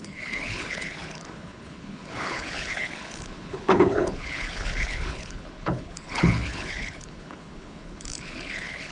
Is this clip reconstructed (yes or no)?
yes